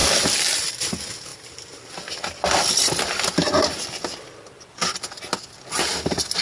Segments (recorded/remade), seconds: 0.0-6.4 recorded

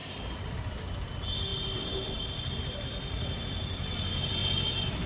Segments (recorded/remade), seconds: 0.0-0.8 remade; 0.8-1.5 recorded; 1.5-3.4 remade; 3.4-5.1 recorded

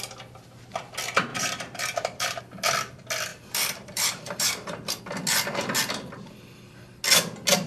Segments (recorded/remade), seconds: 0.0-1.3 recorded; 1.3-2.4 remade; 2.4-3.3 recorded; 3.3-5.0 remade; 5.0-7.7 recorded

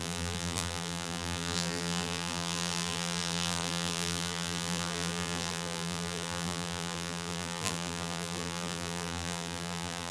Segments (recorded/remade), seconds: 0.0-10.1 remade

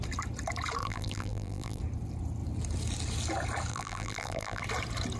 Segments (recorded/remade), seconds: 0.0-0.8 recorded; 0.8-1.8 remade; 1.8-3.7 recorded; 3.7-4.6 remade; 4.6-5.2 recorded

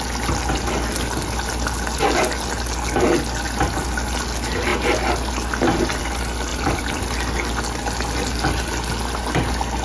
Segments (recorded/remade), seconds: 0.0-6.5 recorded; 6.5-7.0 remade; 7.0-9.8 recorded

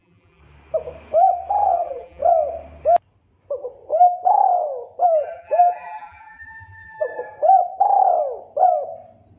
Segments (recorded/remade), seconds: 0.0-0.4 remade; 0.4-1.7 recorded; 1.7-2.2 remade; 2.2-5.0 recorded; 5.0-7.1 remade; 7.1-9.4 recorded

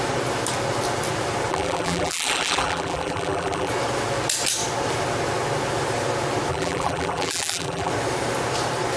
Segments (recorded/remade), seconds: 0.0-1.5 recorded; 1.5-3.7 remade; 3.7-6.5 recorded; 6.5-7.9 remade; 7.9-9.0 recorded